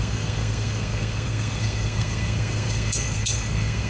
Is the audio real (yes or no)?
no